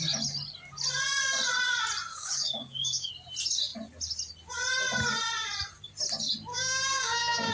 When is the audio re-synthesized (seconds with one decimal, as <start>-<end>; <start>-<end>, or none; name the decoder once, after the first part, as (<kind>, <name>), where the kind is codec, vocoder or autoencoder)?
2.1-3.1 (codec, DAC); 6.5-7.5